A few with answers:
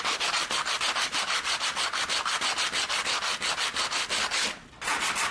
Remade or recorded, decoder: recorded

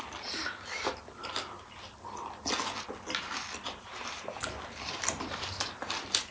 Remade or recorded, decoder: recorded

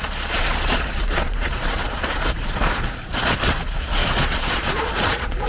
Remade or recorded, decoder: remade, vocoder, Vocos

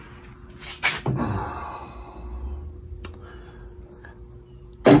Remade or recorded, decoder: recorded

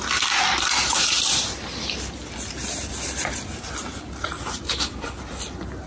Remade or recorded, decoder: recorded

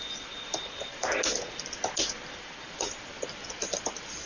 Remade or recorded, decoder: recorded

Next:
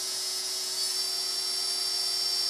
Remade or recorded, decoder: remade, vocoder, Vocos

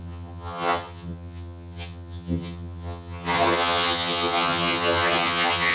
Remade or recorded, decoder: remade, vocoder, HiFi-GAN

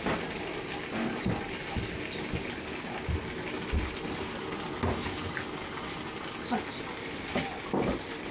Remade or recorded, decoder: recorded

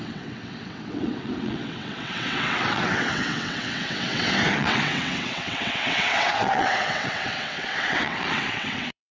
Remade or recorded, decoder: remade, vocoder, WaveNeXt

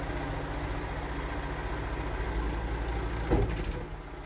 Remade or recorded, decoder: recorded